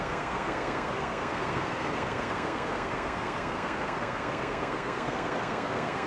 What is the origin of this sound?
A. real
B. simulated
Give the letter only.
B